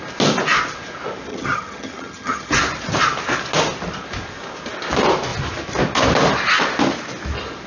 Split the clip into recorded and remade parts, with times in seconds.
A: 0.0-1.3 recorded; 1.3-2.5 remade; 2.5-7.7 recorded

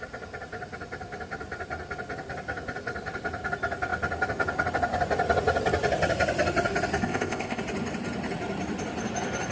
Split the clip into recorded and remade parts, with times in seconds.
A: 0.0-7.0 recorded; 7.0-7.6 remade; 7.6-9.5 recorded

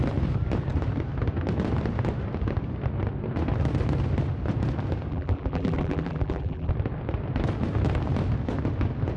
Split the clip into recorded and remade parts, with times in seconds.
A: 0.0-5.1 recorded; 5.1-6.7 remade; 6.7-9.2 recorded

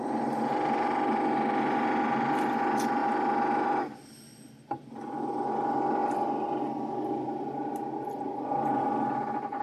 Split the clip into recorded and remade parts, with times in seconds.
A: 0.0-9.6 recorded

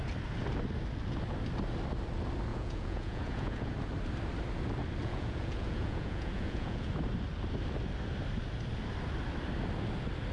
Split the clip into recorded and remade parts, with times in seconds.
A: 0.0-2.5 recorded; 2.5-3.6 remade; 3.6-5.0 recorded; 5.0-6.9 remade; 6.9-10.3 recorded

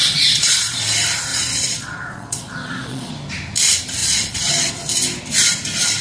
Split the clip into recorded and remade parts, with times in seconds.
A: 0.0-0.8 remade; 0.8-1.3 recorded; 1.3-3.1 remade; 3.1-4.0 recorded; 4.0-4.7 remade; 4.7-6.0 recorded